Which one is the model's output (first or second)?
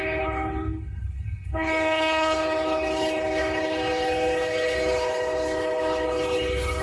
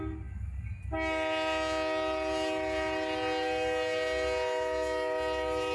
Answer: first